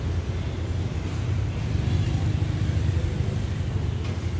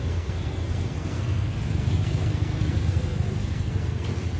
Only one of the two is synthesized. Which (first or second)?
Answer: second